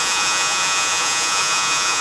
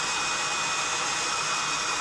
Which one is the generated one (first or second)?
first